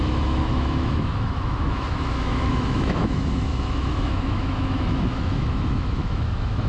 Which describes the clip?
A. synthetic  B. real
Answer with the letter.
A